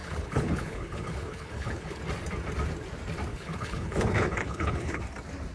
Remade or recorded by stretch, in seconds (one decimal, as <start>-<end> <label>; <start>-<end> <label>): 0.0-2.0 remade; 2.0-3.3 recorded; 3.3-5.0 remade; 5.0-5.5 recorded